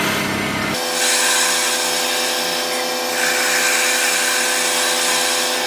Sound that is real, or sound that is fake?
real